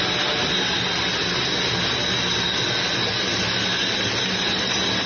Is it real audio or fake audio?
real